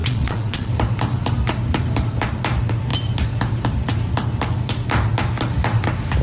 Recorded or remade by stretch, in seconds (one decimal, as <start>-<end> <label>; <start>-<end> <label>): 0.0-0.7 remade; 0.7-6.2 recorded